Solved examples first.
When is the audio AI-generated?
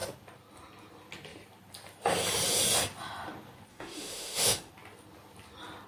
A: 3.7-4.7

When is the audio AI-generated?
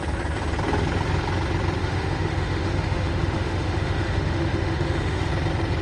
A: 1.8-5.3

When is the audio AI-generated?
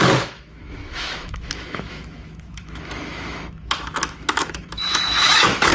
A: 0.0-5.7